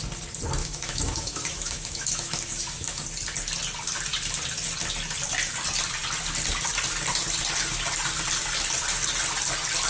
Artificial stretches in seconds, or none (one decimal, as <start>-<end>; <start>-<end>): 0.6-3.0